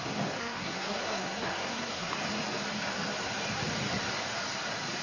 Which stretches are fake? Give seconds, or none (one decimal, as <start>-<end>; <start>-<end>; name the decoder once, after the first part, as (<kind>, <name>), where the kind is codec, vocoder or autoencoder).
0.4-2.1 (codec, SNAC)